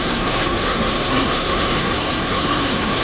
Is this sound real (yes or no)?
no